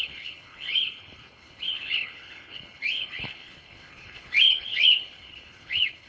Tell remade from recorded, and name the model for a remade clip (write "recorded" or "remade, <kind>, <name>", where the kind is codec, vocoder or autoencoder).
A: remade, codec, HILCodec